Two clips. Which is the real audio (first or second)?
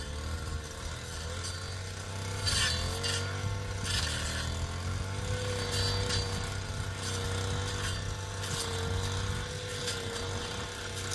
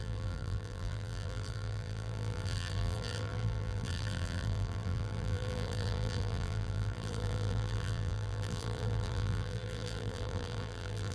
first